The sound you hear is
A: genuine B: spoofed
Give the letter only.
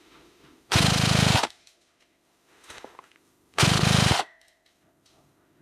B